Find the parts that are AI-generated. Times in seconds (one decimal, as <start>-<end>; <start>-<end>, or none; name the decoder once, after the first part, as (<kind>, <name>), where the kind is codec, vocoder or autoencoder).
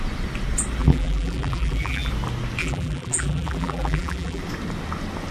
0.8-2.1 (vocoder, BigVGAN v2); 2.6-4.4